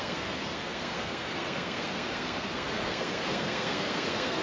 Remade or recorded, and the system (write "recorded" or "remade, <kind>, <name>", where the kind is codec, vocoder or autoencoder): remade, codec, SNAC